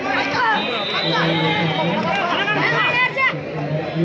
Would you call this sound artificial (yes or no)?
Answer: no